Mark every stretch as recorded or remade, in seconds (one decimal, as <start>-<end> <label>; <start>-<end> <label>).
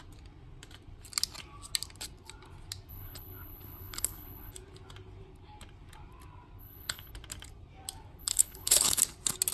0.0-2.9 recorded; 2.9-4.5 remade; 4.5-6.6 recorded; 6.6-7.1 remade; 7.1-8.2 recorded; 8.2-9.0 remade; 9.0-9.5 recorded